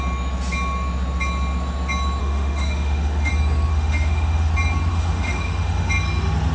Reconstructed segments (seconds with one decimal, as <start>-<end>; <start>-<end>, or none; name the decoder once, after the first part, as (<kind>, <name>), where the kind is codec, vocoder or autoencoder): 2.2-3.3 (autoencoder, DAC-VAE); 3.7-4.5; 4.9-5.9